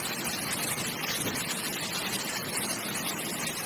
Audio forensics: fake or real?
real